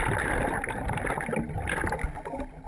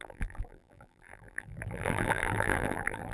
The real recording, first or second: first